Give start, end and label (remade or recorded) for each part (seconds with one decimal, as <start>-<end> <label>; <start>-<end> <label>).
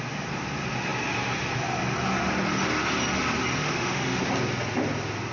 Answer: 0.0-3.6 recorded; 3.6-4.2 remade; 4.2-5.3 recorded